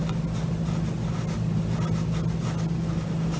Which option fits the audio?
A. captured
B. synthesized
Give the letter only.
A